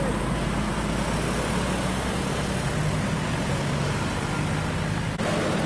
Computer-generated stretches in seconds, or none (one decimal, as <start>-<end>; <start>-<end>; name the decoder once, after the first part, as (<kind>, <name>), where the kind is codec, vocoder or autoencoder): none